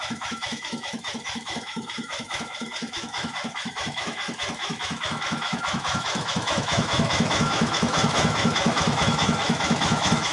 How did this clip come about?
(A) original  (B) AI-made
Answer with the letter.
B